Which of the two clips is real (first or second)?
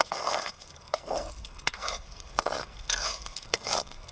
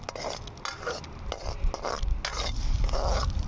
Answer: second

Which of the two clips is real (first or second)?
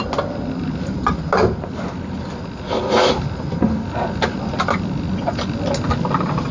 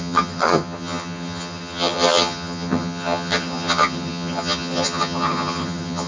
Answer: first